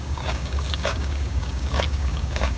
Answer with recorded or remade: remade